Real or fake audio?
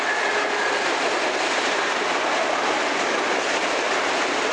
real